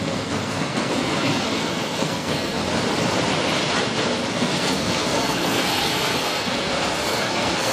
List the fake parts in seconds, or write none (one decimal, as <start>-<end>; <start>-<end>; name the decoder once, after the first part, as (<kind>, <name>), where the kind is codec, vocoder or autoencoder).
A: 0.0-2.6 (codec, SNAC); 4.3-7.7